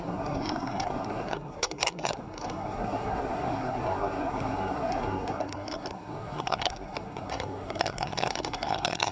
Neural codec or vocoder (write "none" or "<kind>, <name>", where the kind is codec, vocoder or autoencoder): codec, SNAC